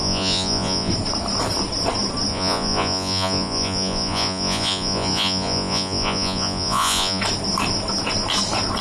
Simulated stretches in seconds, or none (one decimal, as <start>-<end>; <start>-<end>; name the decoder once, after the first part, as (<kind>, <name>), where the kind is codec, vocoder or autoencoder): 0.0-0.9 (vocoder, Vocos); 2.3-7.2